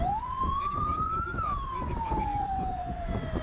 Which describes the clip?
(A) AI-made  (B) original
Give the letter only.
A